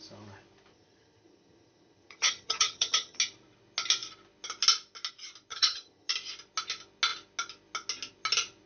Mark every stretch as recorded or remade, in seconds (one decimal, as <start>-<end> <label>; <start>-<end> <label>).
0.0-0.7 recorded; 0.7-3.2 remade; 3.2-5.5 recorded; 5.5-6.1 remade; 6.1-8.7 recorded